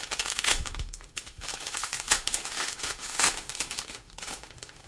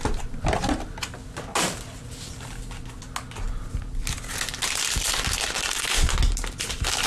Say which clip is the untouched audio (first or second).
second